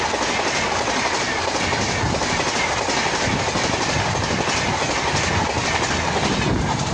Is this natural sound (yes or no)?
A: yes